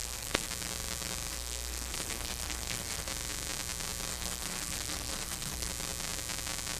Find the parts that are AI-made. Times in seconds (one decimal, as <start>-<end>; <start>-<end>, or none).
0.0-0.5; 1.3-3.1; 4.1-5.7